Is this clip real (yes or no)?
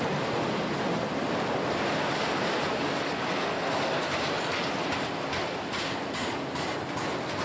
yes